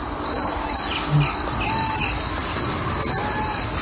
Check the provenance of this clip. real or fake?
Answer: real